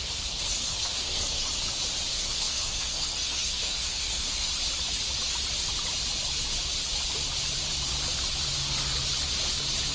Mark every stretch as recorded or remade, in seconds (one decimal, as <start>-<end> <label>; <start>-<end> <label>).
0.0-1.5 remade; 1.5-2.1 recorded; 2.1-4.5 remade; 4.5-9.9 recorded